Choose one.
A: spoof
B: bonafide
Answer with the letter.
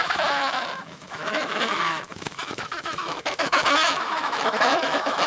A